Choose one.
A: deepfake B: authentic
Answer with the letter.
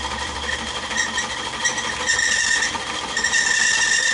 A